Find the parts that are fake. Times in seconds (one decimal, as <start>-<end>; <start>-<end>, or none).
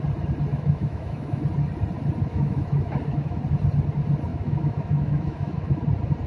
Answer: 0.5-1.4; 2.2-3.4; 4.3-5.8